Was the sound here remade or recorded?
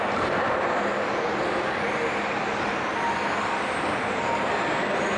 remade